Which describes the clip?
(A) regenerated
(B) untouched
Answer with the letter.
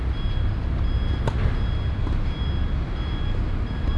B